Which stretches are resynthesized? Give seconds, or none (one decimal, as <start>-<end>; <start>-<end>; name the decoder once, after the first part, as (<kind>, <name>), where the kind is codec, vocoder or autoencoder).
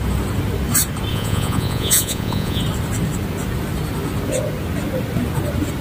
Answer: 1.1-2.6 (vocoder, Vocos)